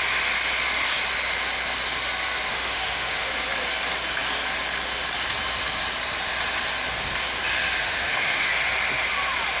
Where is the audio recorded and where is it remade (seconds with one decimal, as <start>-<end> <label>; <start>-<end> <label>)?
0.0-2.5 recorded; 2.5-3.3 remade; 3.3-7.8 recorded; 7.8-8.5 remade; 8.5-9.6 recorded